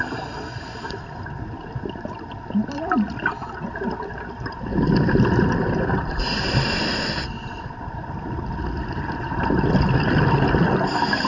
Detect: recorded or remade recorded